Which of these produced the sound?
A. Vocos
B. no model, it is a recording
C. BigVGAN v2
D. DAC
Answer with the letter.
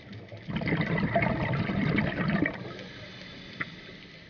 B